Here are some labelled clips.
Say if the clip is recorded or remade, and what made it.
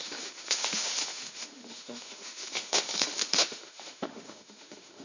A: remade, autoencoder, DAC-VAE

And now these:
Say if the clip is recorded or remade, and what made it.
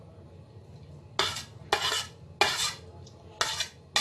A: recorded